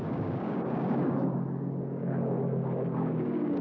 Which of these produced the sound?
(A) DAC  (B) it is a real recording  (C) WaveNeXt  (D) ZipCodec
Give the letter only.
A